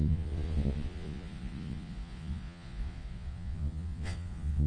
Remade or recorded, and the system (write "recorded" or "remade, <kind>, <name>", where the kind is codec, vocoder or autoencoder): remade, vocoder, Vocos